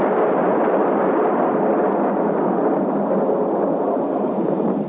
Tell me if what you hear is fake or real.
real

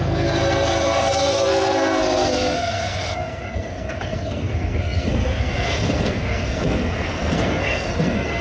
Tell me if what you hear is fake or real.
fake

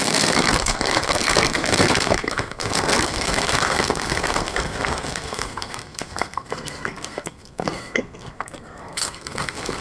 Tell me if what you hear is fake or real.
fake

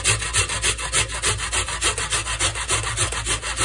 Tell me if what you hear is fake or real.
real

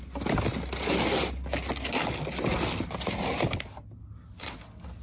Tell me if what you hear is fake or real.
real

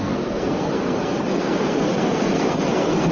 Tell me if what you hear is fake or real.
fake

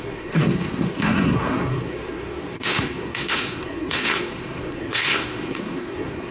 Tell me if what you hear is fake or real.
fake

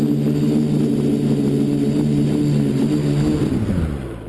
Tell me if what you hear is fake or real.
real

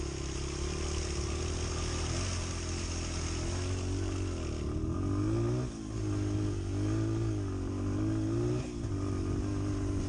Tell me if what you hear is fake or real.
real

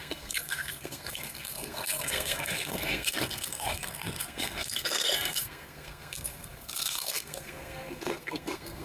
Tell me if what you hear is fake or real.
fake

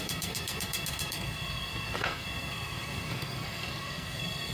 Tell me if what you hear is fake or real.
fake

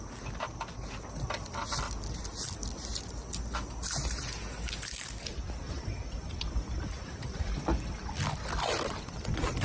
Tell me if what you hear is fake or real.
real